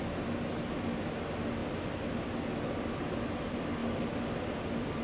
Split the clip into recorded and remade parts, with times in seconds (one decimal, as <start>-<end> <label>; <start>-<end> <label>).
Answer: 0.0-5.0 recorded